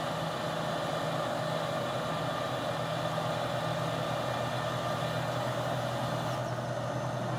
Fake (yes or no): no